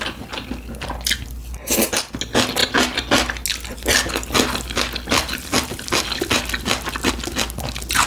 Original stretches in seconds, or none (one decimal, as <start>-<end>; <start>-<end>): 0.0-8.1